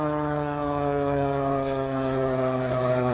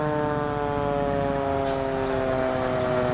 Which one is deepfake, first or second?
first